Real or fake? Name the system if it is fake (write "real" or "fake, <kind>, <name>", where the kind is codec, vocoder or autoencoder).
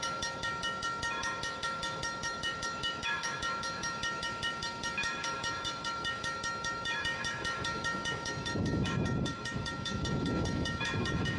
fake, autoencoder, DAC-VAE